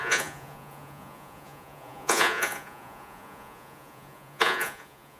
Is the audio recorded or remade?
remade